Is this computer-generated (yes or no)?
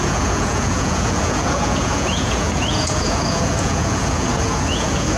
yes